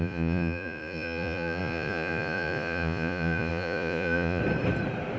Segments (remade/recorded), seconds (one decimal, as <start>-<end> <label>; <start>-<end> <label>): 0.0-4.4 remade; 4.4-5.2 recorded